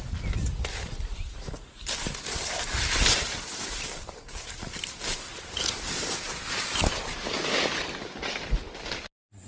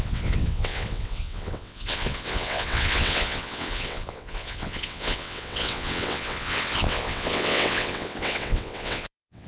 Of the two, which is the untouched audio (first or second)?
first